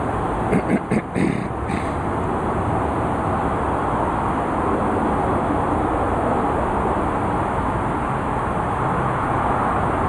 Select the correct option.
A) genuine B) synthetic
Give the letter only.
A